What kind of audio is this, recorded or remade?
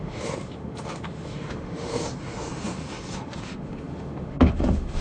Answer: remade